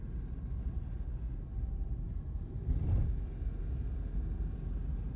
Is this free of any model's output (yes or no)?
yes